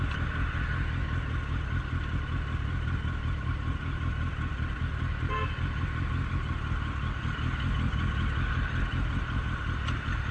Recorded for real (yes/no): yes